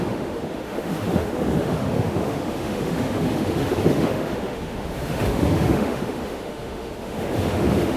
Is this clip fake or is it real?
fake